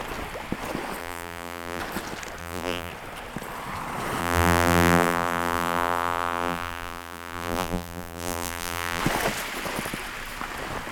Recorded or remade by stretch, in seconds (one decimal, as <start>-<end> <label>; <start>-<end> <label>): 0.0-1.0 recorded; 1.0-1.8 remade; 1.8-2.4 recorded; 2.4-2.9 remade; 2.9-4.2 recorded; 4.2-9.0 remade; 9.0-10.9 recorded